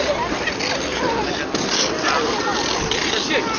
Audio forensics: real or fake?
real